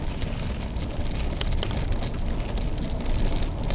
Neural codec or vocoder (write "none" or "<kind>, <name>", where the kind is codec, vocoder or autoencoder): none